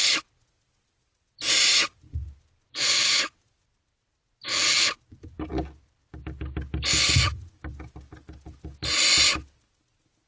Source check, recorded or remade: recorded